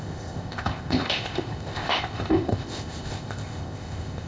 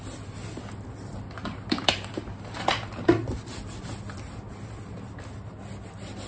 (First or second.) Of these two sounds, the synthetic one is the first